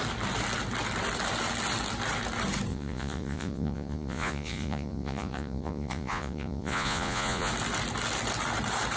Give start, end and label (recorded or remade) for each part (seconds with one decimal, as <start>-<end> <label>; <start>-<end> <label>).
0.0-2.7 recorded; 2.7-7.5 remade; 7.5-9.0 recorded